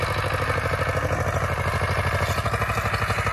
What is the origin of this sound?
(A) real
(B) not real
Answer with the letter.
A